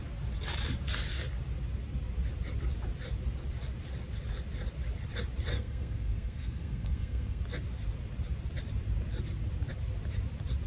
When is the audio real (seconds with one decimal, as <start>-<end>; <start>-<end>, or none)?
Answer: 0.0-5.5; 7.4-10.7